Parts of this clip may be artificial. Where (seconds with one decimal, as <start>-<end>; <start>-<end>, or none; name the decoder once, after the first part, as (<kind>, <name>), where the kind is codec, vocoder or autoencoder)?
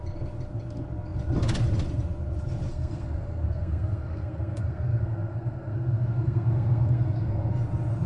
2.7-7.5 (codec, SNAC)